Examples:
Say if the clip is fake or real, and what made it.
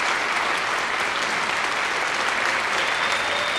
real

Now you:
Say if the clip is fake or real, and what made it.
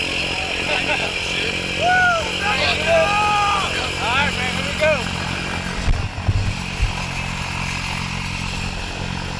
real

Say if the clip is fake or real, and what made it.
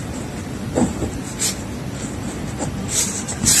real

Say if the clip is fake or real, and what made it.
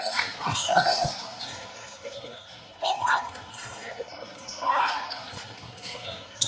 fake, codec, SNAC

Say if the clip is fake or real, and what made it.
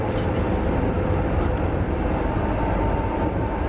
fake, vocoder, BigVGAN v2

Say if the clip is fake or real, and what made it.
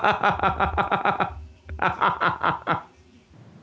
real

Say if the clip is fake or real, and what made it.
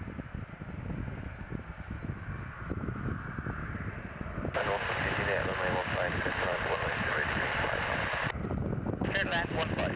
real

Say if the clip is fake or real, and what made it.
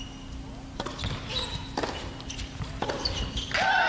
real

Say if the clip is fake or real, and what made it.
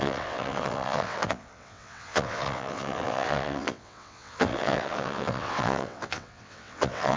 fake, vocoder, WaveNeXt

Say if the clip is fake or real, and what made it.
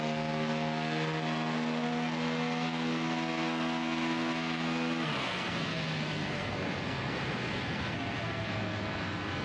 fake, codec, SNAC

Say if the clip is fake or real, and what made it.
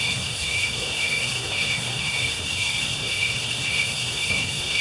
fake, codec, SNAC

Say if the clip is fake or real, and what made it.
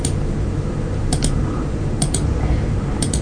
fake, vocoder, BigVGAN v2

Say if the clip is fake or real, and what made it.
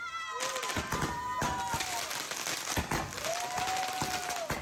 real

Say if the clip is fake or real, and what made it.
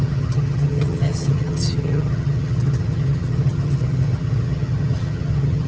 fake, vocoder, HiFi-GAN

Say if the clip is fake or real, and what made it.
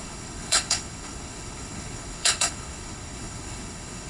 fake, codec, HILCodec